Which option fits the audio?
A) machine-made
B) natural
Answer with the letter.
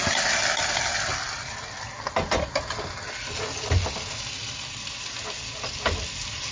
B